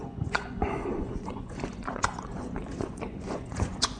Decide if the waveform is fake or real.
fake